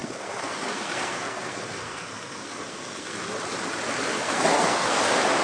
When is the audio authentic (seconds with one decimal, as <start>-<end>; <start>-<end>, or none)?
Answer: 3.2-4.1; 5.0-5.4